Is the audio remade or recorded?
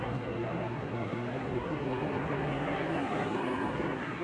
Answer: remade